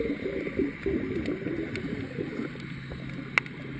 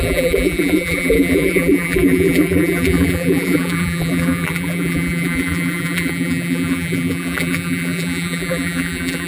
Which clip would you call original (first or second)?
first